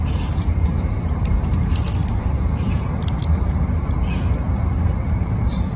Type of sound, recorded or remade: remade